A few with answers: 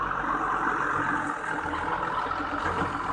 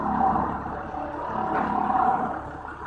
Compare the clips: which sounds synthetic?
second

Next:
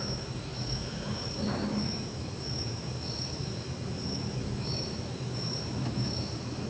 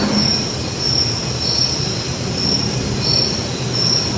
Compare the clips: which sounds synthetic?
first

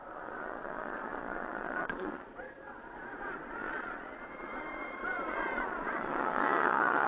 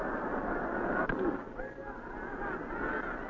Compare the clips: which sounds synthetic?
first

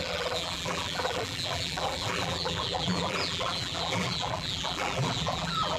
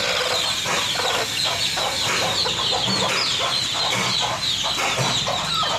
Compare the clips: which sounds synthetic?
first